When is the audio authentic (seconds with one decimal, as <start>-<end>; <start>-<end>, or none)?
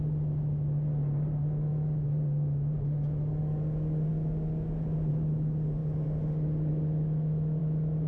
0.0-8.1